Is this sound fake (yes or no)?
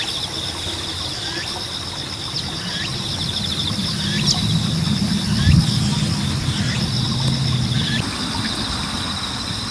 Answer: no